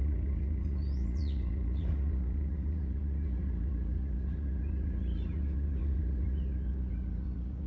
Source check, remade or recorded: remade